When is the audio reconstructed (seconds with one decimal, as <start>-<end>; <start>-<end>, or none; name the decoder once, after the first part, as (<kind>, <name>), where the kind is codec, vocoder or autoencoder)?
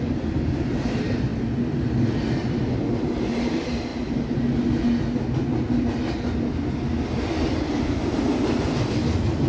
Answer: none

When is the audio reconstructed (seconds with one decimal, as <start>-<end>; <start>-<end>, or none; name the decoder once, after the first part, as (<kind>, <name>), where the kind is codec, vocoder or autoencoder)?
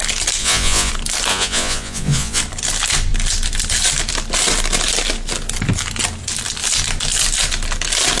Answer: 0.4-0.9 (vocoder, Vocos); 1.3-2.4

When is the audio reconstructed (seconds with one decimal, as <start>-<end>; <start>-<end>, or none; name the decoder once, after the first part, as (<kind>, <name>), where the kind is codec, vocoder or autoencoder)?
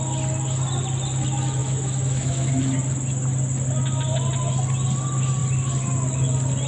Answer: 1.6-2.5 (autoencoder, DAC-VAE)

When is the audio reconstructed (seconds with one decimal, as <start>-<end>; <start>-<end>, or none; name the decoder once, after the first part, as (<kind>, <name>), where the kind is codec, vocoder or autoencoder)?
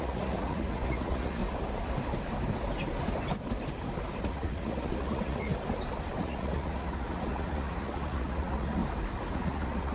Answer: 0.0-1.4 (vocoder, Vocos); 4.2-5.5; 6.2-8.8; 9.3-9.9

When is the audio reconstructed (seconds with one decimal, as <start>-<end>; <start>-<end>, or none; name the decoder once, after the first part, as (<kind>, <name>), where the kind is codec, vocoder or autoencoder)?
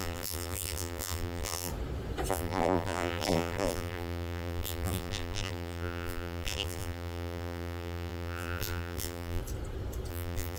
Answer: 0.0-1.7 (vocoder, BigVGAN v2); 2.3-9.4; 10.1-10.6